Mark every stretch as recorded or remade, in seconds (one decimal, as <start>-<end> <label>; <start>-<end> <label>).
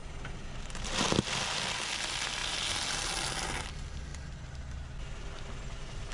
0.0-6.1 recorded